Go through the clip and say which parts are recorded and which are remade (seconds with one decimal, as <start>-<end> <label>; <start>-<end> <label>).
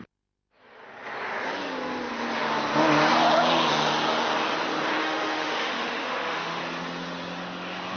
0.0-5.0 recorded; 5.0-6.6 remade; 6.6-8.0 recorded